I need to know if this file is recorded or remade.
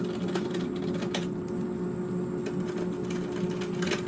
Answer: recorded